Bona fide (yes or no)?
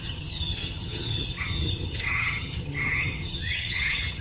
no